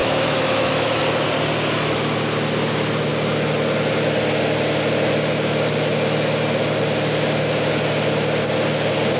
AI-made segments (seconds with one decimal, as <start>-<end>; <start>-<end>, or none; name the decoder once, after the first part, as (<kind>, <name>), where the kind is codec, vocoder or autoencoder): 0.0-1.0 (autoencoder, DAC-VAE)